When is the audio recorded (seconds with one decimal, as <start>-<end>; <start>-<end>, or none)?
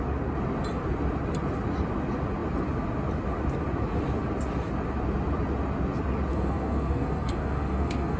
0.0-6.3